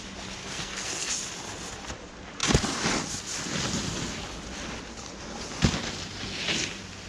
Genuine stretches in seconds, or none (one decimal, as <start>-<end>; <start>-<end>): 0.0-0.4; 1.1-7.1